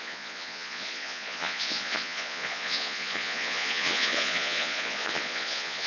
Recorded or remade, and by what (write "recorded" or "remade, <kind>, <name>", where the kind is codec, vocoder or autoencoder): remade, vocoder, Vocos